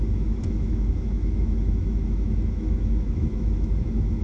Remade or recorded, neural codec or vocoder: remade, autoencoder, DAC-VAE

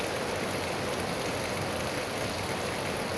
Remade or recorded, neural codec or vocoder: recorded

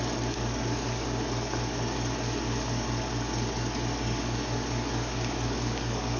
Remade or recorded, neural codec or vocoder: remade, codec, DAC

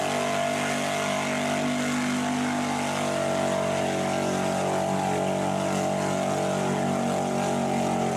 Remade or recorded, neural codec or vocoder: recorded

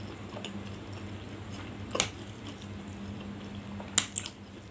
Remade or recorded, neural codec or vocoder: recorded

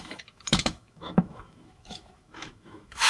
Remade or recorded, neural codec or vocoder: remade, autoencoder, DAC-VAE